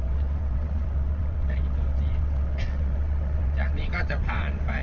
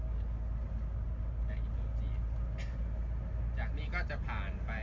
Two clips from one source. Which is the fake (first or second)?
first